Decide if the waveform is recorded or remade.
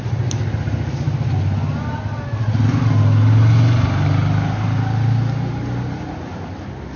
recorded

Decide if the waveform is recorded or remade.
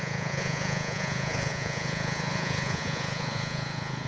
remade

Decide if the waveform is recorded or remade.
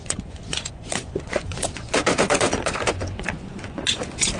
remade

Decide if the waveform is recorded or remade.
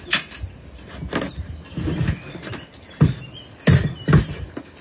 recorded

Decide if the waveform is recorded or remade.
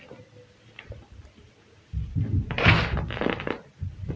recorded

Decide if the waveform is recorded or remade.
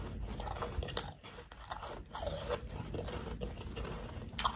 recorded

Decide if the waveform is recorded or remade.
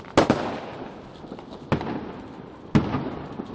recorded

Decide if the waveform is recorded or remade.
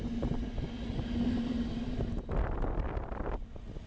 recorded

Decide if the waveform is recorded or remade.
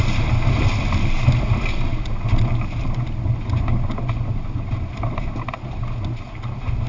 recorded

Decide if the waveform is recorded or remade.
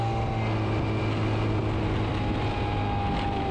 recorded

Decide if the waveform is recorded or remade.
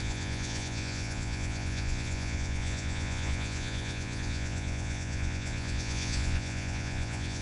remade